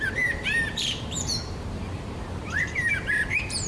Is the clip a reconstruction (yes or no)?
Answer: yes